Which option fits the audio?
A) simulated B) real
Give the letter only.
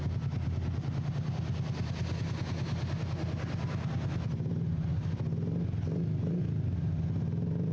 B